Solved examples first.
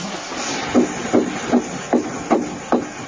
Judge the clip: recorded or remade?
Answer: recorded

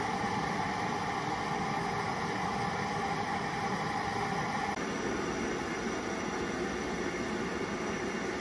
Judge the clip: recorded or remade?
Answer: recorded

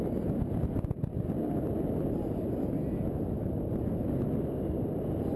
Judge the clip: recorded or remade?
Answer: recorded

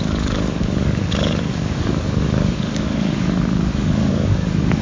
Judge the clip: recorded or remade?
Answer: remade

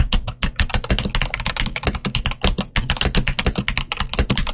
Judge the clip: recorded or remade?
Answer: recorded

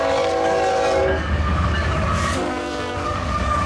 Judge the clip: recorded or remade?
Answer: remade